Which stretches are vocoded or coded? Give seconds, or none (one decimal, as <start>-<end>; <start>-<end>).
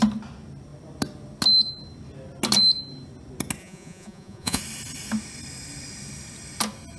3.6-4.6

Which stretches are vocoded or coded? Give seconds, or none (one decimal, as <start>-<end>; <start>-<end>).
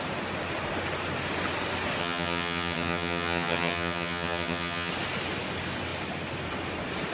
2.0-4.9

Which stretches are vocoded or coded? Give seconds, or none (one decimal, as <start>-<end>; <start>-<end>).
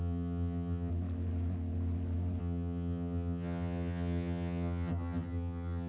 0.0-0.9; 2.4-5.9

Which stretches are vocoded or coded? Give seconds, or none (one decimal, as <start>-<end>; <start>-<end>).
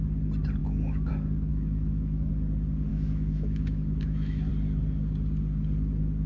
0.6-1.1; 1.5-2.3; 2.9-4.5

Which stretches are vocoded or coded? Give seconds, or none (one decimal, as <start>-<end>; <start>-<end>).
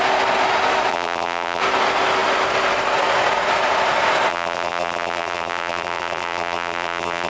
0.9-1.6; 4.3-7.3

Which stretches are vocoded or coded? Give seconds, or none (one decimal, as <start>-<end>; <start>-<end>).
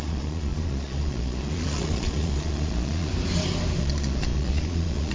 0.0-3.1; 3.8-5.1